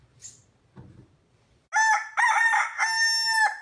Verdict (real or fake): real